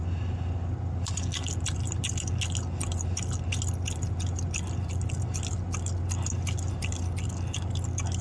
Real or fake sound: real